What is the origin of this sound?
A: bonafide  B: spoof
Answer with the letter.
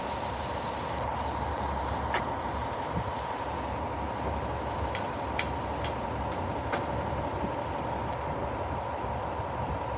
A